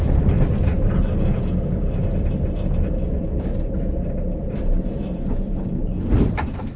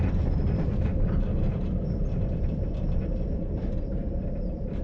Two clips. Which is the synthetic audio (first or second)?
second